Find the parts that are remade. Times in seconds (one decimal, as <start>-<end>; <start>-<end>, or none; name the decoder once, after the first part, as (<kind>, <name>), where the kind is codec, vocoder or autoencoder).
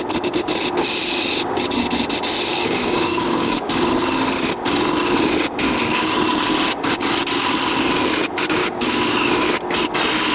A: 2.5-3.7 (codec, DAC); 8.6-9.3